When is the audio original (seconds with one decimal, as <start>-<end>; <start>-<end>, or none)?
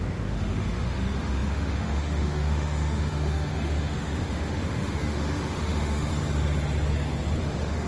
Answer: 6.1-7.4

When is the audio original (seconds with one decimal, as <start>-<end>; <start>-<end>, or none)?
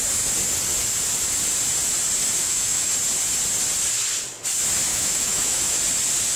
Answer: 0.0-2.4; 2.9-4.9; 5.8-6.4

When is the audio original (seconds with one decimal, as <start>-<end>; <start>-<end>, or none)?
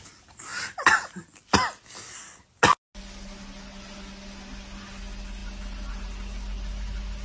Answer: 0.0-7.2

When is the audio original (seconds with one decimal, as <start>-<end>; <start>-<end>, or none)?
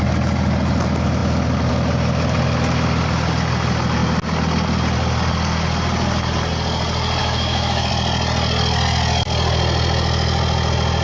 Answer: 0.0-7.2; 7.9-11.0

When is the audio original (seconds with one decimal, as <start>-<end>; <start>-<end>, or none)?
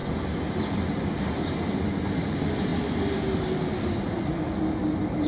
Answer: 0.0-5.3